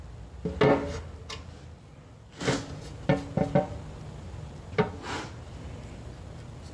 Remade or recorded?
recorded